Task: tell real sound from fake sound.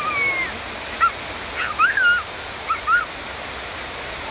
real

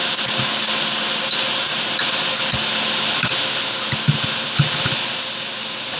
real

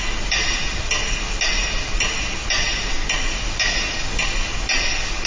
real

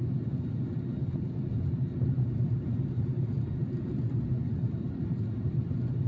real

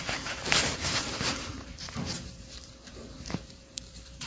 fake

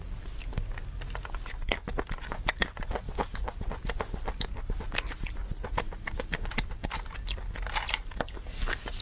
real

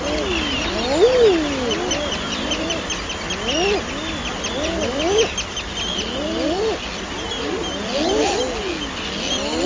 real